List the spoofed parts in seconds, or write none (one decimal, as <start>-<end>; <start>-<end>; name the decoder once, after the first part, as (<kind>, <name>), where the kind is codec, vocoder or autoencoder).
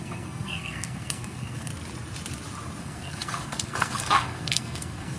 0.0-1.7 (codec, SNAC); 2.8-5.2